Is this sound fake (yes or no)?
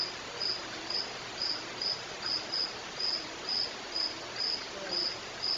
no